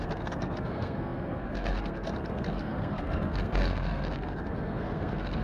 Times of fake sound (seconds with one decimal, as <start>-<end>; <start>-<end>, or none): 0.0-5.4